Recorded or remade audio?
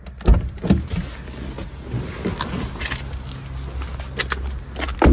recorded